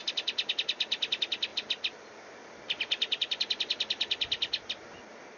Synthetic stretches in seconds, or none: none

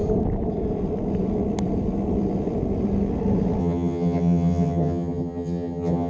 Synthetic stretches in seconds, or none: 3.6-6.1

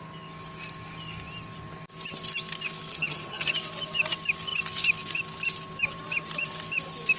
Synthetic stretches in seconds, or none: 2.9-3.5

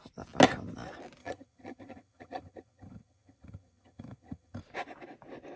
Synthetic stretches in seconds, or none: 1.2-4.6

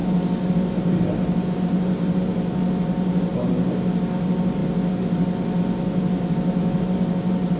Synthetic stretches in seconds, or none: none

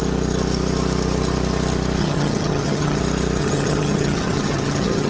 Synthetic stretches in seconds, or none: 2.0-3.0; 3.4-5.1

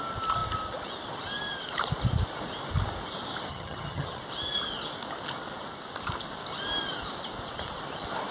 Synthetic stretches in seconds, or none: 3.5-4.2